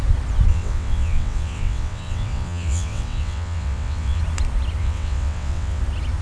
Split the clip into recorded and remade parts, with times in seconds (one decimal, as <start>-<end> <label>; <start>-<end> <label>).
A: 0.0-0.5 recorded; 0.5-4.2 remade; 4.2-4.8 recorded; 4.8-5.8 remade; 5.8-6.2 recorded